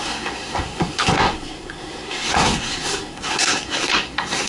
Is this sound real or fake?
fake